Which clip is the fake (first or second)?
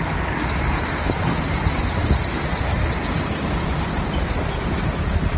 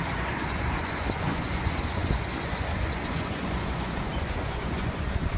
second